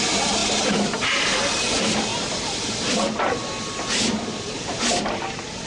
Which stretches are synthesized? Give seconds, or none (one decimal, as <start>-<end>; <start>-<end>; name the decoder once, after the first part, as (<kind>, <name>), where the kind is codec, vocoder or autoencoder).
none